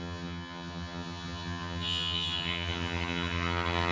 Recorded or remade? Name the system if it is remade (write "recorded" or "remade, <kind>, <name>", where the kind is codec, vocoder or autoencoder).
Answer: remade, vocoder, HiFi-GAN